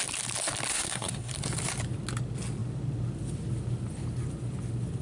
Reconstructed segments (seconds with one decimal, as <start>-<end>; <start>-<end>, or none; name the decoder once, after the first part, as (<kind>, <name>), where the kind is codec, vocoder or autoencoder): 0.7-1.3 (codec, SNAC)